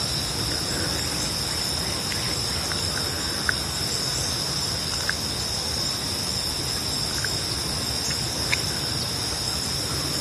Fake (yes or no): no